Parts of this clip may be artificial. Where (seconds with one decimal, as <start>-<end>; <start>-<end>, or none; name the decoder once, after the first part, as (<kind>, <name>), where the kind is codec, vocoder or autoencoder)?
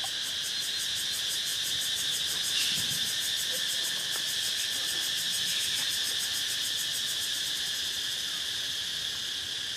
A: none